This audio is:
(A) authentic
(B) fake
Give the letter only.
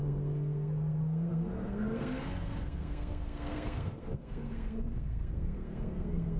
B